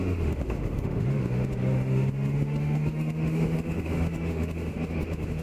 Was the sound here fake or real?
fake